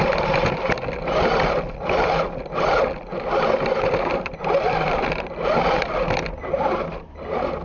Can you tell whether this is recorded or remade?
recorded